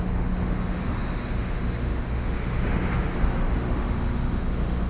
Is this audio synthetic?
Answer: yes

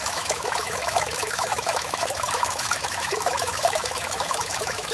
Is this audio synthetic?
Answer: yes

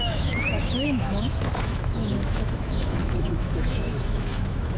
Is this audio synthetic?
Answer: yes